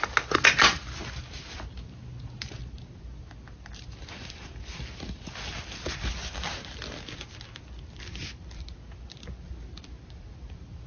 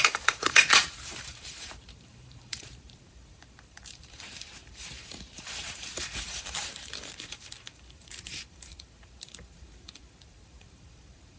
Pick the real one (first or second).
first